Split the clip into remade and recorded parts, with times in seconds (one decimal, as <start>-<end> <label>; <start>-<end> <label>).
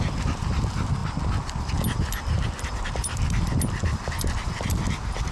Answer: 0.0-5.3 recorded